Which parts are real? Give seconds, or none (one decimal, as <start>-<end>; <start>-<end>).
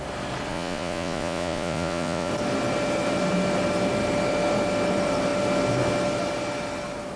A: 0.0-0.5; 2.3-7.2